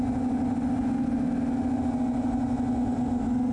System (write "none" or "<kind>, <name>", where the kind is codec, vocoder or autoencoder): none